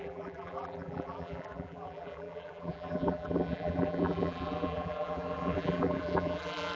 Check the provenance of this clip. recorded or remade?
remade